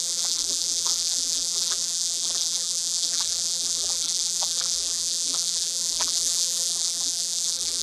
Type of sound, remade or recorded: remade